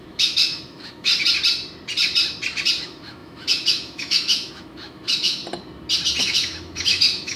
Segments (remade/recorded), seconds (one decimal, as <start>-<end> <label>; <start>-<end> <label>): 0.0-1.1 remade; 1.1-2.8 recorded; 2.8-5.4 remade; 5.4-6.2 recorded; 6.2-7.4 remade